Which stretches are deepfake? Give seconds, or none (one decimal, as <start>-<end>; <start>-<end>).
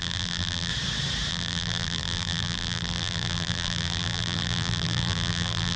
0.0-0.7; 1.3-5.8